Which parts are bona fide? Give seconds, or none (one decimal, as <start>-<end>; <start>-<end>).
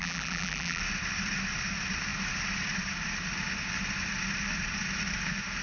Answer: 0.8-5.6